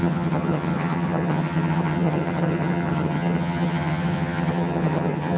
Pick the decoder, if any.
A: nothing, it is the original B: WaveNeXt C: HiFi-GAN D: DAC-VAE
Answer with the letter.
C